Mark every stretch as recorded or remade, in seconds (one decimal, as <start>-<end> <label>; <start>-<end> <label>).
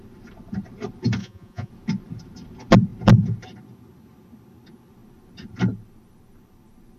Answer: 0.0-1.2 recorded; 1.2-1.7 remade; 1.7-7.0 recorded